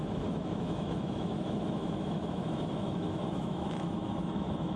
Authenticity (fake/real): fake